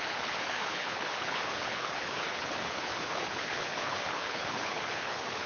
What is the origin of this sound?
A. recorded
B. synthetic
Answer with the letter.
B